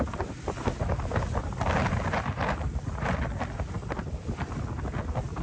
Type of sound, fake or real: real